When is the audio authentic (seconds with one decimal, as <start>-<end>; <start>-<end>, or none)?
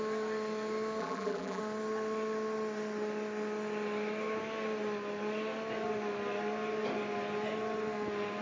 0.0-1.0; 1.6-8.4